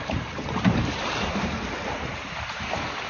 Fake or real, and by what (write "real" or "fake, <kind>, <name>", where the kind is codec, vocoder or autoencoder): fake, vocoder, BigVGAN v2